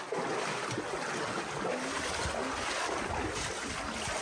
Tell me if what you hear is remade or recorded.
recorded